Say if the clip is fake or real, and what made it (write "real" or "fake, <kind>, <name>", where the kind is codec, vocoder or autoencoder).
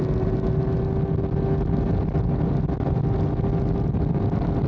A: real